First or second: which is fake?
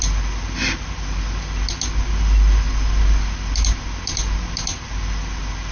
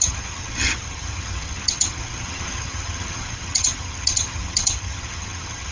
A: second